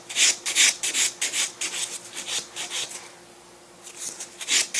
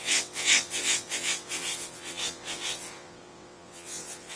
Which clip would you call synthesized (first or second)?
second